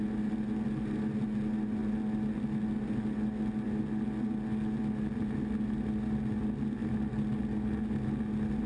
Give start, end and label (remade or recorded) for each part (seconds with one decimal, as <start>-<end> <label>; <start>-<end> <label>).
0.0-8.7 recorded